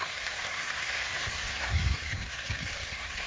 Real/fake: fake